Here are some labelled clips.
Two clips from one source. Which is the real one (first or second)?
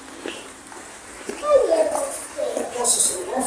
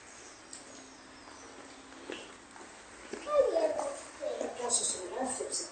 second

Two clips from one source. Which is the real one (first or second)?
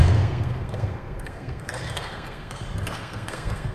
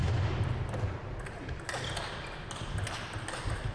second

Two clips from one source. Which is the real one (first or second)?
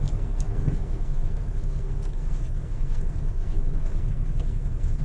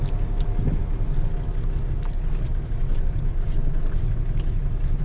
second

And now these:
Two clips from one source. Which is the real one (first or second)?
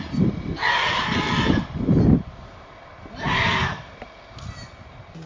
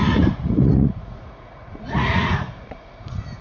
first